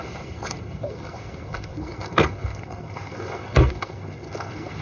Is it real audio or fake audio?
fake